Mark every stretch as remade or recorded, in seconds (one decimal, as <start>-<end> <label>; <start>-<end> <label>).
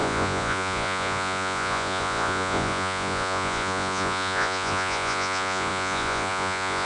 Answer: 0.0-6.9 remade